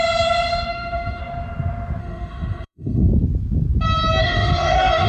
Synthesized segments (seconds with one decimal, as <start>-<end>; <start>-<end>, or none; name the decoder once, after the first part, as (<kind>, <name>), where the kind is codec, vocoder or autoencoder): 0.7-1.2 (autoencoder, DAC-VAE); 2.0-3.1; 4.2-5.1